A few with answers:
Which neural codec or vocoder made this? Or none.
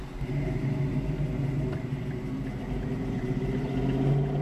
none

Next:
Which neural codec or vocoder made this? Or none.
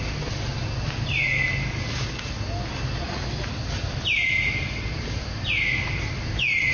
none